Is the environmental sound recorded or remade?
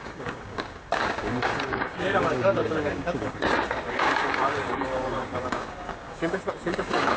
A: remade